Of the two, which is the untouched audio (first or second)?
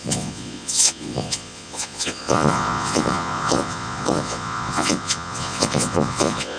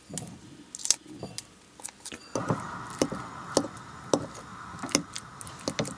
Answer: second